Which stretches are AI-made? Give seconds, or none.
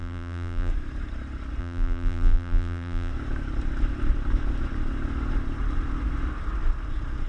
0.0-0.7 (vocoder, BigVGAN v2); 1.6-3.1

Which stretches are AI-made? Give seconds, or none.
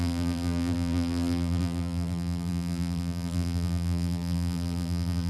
0.0-5.3 (vocoder, BigVGAN v2)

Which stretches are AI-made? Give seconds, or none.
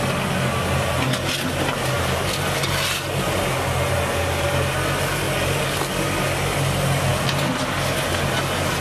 none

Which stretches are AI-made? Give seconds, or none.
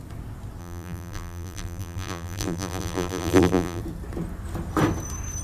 0.6-3.8 (vocoder, BigVGAN v2)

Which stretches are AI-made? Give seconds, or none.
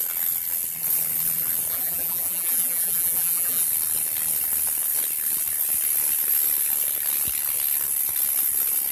1.7-3.6 (vocoder, BigVGAN v2)